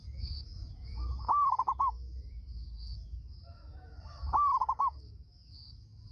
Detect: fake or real fake